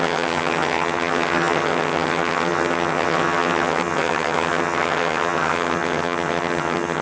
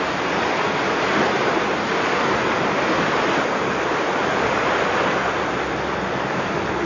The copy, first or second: first